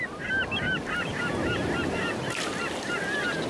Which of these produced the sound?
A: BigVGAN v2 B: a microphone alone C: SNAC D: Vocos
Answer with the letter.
B